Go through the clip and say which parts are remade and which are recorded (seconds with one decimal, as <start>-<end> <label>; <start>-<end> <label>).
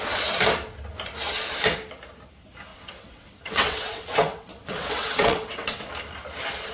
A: 0.0-2.7 recorded; 2.7-5.9 remade; 5.9-6.7 recorded